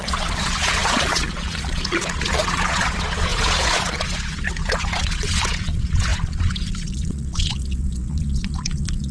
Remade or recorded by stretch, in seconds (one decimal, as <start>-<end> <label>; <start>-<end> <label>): 0.0-9.1 remade